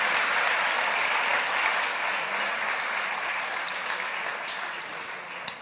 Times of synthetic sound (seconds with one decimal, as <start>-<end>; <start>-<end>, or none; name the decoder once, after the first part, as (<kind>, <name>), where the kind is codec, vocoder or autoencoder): none